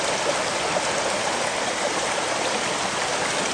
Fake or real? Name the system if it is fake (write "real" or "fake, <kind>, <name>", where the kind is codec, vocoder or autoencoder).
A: real